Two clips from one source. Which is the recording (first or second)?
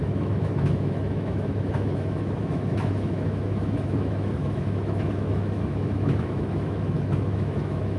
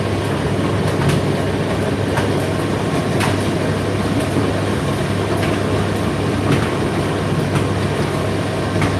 second